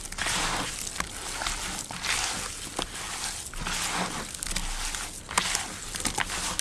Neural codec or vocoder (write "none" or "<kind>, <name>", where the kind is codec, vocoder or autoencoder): none